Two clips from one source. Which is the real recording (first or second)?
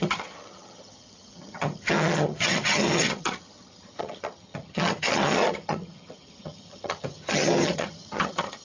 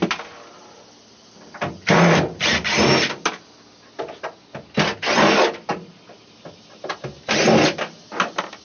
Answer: second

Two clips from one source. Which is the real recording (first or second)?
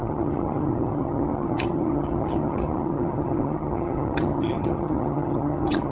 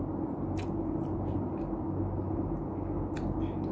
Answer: second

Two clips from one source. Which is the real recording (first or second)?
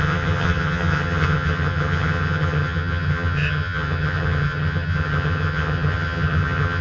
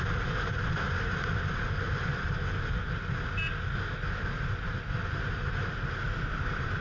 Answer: second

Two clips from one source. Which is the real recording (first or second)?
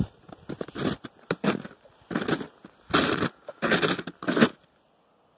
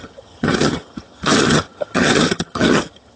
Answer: first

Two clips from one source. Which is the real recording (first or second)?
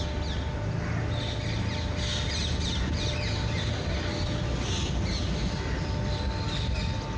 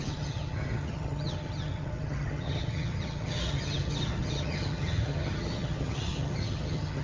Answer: first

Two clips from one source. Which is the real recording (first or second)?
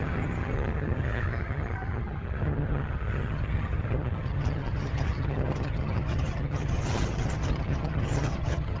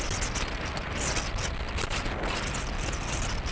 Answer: second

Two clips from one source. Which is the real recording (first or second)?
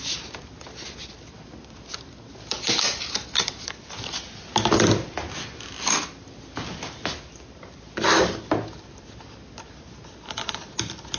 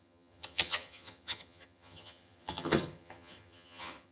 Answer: first